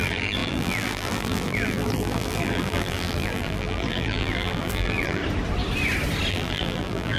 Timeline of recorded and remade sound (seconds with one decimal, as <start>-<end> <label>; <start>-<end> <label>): 0.0-5.2 remade; 5.2-6.3 recorded; 6.3-7.2 remade